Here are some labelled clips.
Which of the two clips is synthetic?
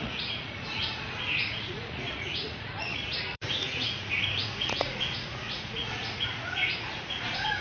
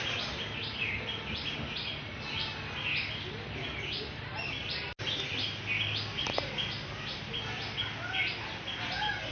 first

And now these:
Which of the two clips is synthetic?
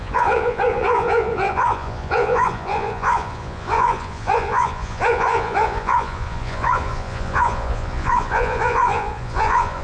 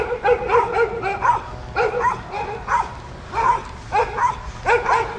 first